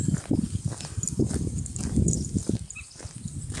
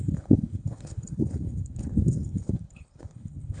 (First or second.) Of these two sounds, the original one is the first